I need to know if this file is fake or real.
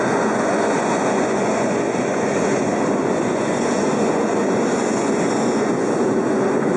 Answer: fake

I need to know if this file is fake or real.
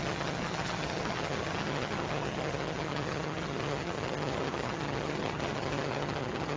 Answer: fake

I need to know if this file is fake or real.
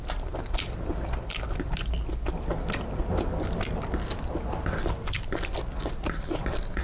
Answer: real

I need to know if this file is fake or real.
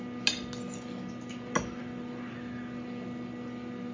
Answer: real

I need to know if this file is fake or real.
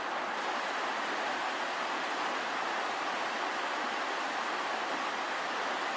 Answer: real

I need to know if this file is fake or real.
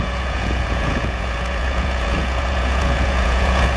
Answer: fake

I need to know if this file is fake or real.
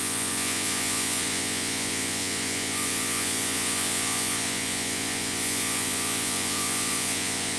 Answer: fake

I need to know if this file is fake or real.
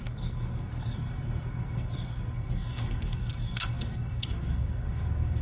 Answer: fake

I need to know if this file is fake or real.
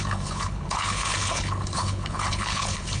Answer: fake